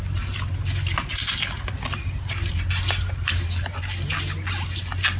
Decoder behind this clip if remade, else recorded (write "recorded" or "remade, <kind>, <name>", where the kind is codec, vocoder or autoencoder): recorded